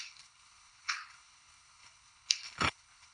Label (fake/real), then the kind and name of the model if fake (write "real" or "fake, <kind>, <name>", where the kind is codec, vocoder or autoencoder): fake, codec, HILCodec